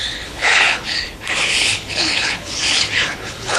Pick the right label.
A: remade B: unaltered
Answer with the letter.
A